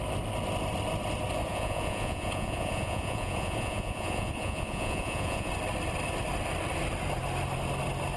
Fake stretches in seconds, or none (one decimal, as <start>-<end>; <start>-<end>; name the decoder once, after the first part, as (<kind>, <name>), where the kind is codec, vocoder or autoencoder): 1.5-5.5 (vocoder, Vocos)